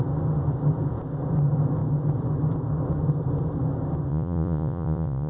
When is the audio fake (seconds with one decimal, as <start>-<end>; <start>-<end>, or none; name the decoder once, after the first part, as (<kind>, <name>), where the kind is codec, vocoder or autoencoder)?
4.1-5.3 (vocoder, Vocos)